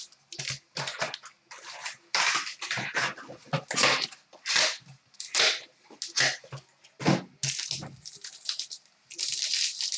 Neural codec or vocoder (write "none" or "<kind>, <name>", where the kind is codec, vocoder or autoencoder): none